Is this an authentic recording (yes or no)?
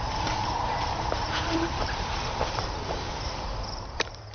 no